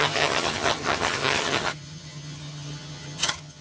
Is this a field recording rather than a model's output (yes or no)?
no